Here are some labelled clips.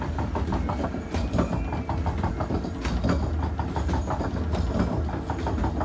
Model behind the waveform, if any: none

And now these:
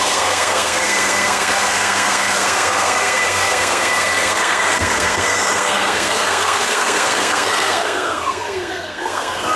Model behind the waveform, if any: codec, SNAC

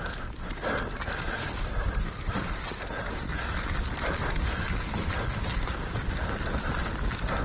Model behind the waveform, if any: none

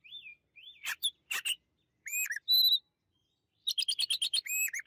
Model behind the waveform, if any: none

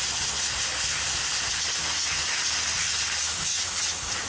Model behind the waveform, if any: none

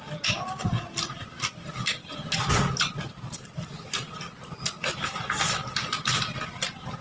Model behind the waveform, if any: none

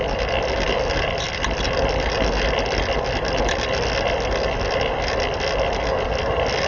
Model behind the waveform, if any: none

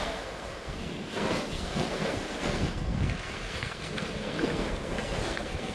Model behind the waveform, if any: codec, SNAC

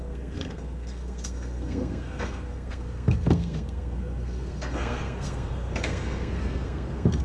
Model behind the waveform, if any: codec, SNAC